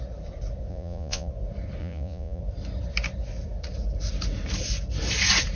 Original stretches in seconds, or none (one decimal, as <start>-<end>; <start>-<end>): 0.0-0.7; 1.3-1.8; 2.4-5.6